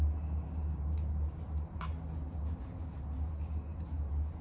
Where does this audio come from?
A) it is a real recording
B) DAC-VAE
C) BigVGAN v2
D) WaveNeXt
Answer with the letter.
A